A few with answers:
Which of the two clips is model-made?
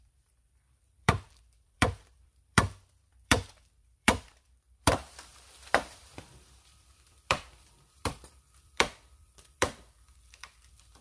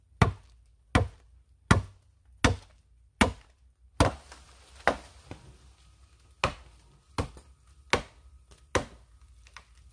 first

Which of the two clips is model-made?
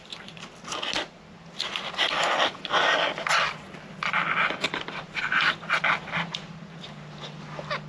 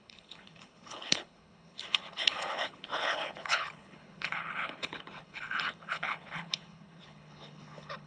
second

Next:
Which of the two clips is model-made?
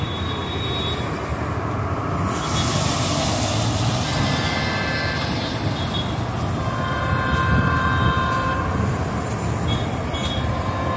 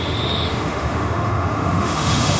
second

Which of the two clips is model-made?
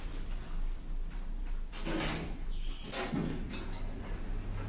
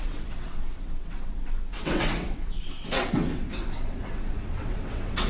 second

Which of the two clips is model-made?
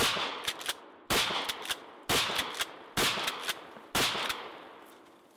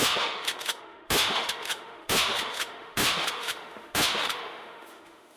second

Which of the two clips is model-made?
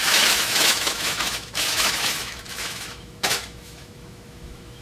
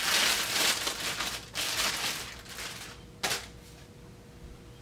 first